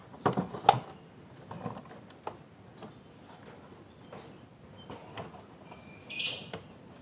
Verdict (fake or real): real